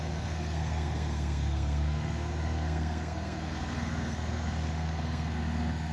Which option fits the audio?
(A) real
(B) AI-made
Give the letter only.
B